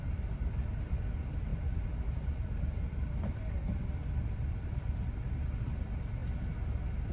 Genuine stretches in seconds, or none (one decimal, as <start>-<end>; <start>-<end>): 6.2-7.1

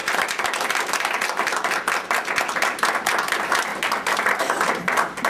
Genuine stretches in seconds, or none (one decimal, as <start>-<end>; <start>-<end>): 1.9-3.7; 4.4-5.3

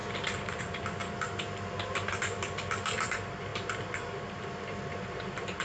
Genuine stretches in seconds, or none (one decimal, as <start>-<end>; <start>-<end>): 0.0-0.6; 1.0-2.0

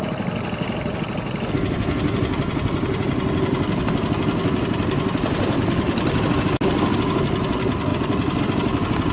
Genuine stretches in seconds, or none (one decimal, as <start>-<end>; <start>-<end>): 0.0-7.9; 8.4-9.1

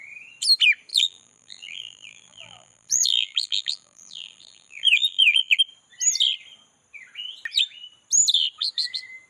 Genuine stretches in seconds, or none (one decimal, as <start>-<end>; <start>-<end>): 0.0-0.9; 5.6-9.3

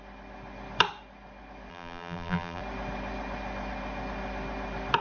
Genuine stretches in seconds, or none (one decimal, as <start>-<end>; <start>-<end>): 0.0-1.7; 2.6-5.0

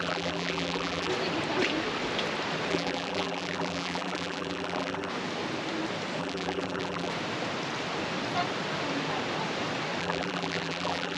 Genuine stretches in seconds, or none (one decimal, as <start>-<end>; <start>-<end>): 1.1-2.7; 5.1-6.2; 7.1-10.0

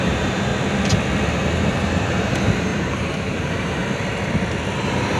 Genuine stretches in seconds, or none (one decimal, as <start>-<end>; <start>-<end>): 0.5-1.6; 3.8-4.8